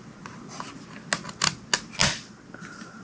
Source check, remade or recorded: recorded